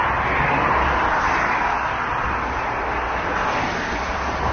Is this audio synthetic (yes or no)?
no